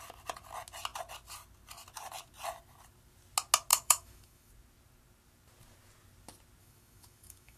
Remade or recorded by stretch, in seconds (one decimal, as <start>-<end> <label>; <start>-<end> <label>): 0.0-3.7 recorded; 3.7-4.5 remade; 4.5-6.6 recorded; 6.6-7.6 remade